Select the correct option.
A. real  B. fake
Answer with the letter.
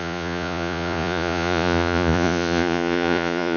B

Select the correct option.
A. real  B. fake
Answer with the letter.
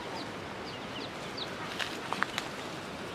A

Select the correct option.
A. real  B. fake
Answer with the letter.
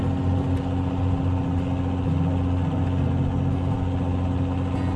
A